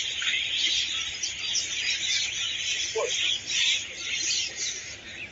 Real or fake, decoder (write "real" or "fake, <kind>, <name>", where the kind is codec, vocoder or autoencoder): fake, vocoder, BigVGAN v2